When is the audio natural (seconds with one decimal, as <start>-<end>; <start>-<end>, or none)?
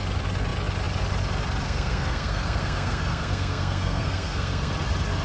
0.0-1.6; 4.7-5.2